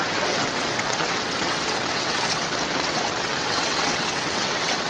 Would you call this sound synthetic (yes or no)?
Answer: yes